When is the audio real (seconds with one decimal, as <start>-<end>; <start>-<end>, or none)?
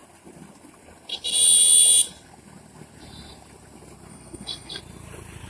0.0-4.1; 4.8-5.5